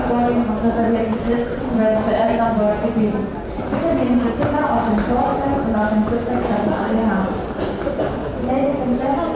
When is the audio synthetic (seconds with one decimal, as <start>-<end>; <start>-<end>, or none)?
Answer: 1.1-1.7